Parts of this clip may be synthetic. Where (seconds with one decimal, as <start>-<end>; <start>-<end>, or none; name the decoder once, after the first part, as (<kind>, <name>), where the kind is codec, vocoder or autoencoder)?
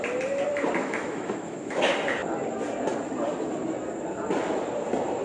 0.8-1.9 (autoencoder, DAC-VAE)